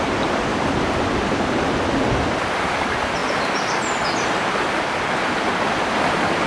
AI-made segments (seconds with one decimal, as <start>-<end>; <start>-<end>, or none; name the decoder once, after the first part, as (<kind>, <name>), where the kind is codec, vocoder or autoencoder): 3.2-4.4 (vocoder, BigVGAN v2)